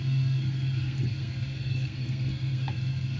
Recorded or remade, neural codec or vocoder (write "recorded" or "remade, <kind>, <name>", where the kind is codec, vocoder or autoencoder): remade, codec, SNAC